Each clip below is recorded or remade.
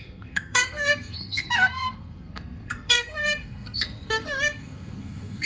remade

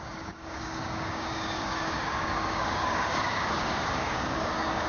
remade